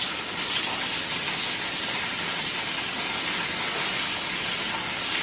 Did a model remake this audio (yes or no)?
no